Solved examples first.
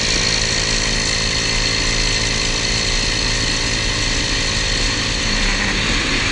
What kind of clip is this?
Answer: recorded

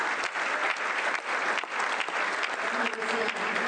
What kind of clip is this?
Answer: recorded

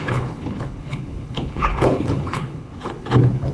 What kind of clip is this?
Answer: remade